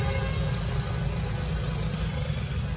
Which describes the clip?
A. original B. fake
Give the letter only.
A